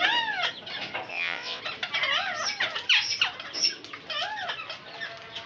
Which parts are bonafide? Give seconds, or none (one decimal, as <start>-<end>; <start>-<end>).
0.0-1.1; 1.6-5.5